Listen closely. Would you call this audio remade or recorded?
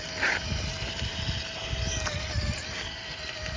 recorded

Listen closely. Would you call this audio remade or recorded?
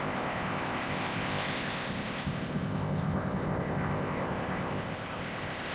remade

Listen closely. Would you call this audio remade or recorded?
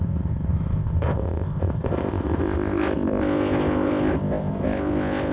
remade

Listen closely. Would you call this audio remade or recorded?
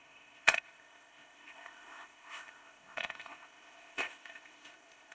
remade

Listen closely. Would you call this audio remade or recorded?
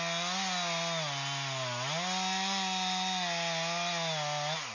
recorded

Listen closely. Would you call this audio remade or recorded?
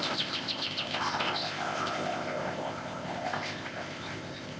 remade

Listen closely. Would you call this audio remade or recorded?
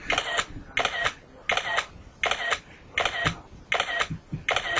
recorded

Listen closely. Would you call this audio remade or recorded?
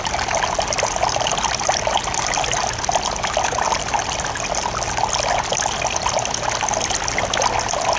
recorded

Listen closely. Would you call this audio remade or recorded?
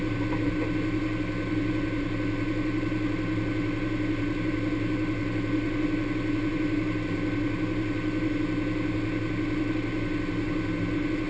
recorded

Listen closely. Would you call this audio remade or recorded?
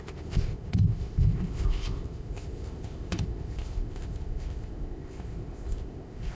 remade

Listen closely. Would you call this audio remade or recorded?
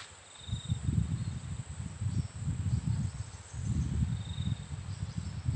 recorded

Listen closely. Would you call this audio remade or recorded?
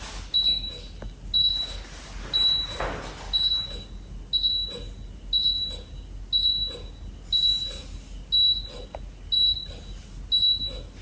recorded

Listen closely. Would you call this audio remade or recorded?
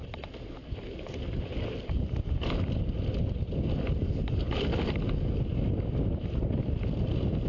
recorded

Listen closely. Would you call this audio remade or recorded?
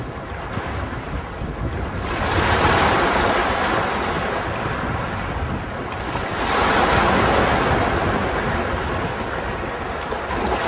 recorded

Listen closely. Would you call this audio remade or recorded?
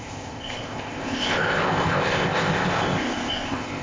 remade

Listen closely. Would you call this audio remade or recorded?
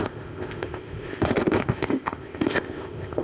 remade